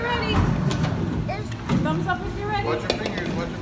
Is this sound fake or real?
real